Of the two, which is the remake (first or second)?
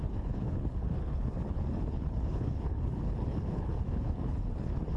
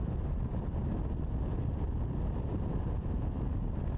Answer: first